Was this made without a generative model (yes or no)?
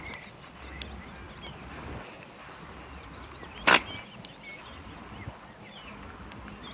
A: yes